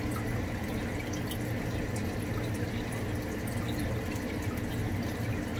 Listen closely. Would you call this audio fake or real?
real